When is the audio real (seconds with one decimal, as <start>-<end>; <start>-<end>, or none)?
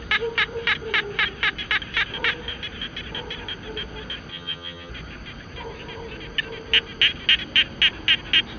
0.0-4.3; 4.9-8.6